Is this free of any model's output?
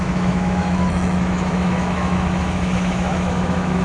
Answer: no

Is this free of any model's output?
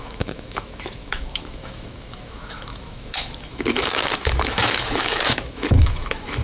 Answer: no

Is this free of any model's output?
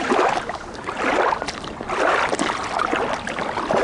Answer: yes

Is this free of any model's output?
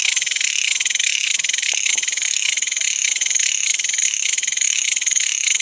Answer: no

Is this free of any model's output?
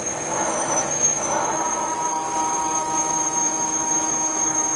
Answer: no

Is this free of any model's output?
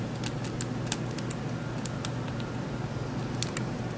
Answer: yes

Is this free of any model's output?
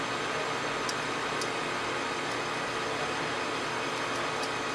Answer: yes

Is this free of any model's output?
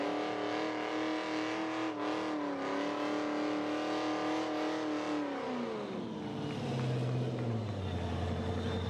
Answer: yes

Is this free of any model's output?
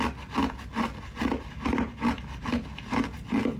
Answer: yes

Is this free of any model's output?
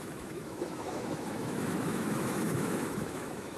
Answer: no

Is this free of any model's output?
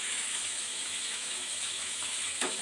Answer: no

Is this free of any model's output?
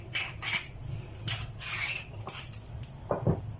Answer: yes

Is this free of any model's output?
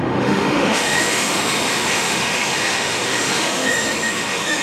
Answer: no